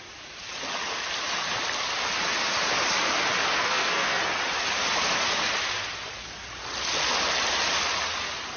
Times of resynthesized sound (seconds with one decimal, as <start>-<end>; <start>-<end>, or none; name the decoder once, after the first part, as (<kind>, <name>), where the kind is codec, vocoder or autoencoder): 3.6-4.2 (codec, SNAC)

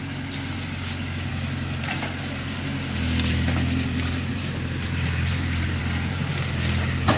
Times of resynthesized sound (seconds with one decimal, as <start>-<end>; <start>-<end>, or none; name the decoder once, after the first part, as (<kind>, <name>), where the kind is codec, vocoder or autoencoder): 1.3-2.7 (vocoder, BigVGAN v2); 4.3-5.8

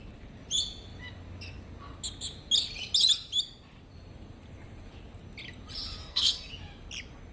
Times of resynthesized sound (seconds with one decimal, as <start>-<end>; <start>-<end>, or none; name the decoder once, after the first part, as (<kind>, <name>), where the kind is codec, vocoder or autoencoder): 6.0-6.5 (codec, SNAC)